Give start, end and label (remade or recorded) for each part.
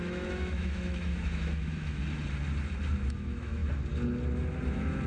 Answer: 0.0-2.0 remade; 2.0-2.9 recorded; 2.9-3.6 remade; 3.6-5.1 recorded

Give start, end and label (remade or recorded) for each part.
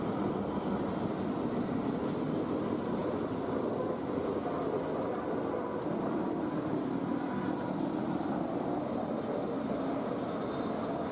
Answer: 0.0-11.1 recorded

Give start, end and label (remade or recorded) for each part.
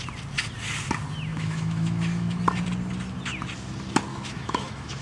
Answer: 0.0-1.3 recorded; 1.3-2.4 remade; 2.4-4.1 recorded; 4.1-5.0 remade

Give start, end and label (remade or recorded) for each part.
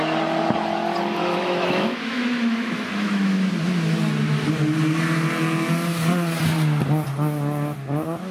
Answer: 0.0-1.2 recorded; 1.2-3.5 remade; 3.5-8.3 recorded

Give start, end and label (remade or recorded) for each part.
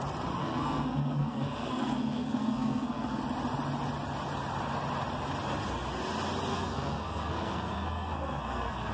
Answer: 0.0-0.4 recorded; 0.4-3.2 remade; 3.2-6.5 recorded; 6.5-8.9 remade